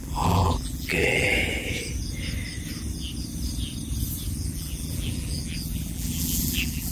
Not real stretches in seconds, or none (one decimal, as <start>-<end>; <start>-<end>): 0.0-1.3; 4.4-6.9